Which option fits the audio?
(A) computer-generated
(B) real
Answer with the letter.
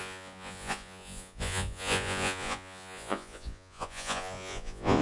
A